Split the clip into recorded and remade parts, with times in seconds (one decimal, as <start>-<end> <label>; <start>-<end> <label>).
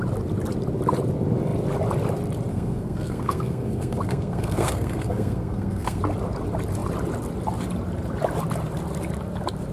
0.0-2.5 recorded; 2.5-6.0 remade; 6.0-9.7 recorded